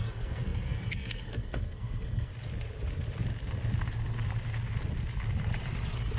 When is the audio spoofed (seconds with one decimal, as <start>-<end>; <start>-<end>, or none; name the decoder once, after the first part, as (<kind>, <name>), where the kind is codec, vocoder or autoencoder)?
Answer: 0.0-2.3 (codec, SNAC)